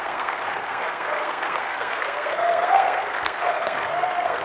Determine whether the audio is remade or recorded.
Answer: remade